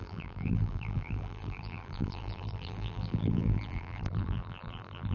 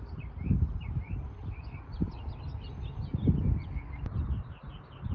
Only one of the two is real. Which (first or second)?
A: second